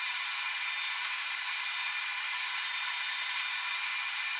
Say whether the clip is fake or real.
real